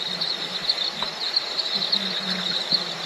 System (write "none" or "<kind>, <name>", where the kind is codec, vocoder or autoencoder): none